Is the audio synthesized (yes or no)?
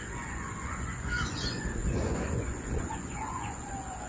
yes